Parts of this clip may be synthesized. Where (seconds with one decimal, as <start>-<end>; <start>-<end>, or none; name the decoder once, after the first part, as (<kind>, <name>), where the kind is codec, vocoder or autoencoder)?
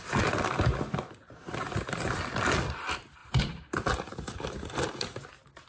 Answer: 3.2-5.3 (vocoder, BigVGAN v2)